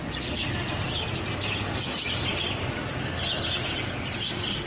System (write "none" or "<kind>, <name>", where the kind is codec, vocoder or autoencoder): none